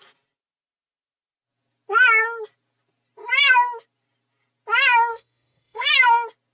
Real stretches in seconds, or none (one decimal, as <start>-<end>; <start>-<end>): 0.0-5.1; 5.9-6.5